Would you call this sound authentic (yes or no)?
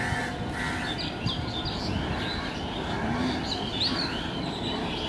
yes